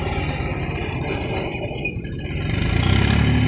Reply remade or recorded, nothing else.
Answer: recorded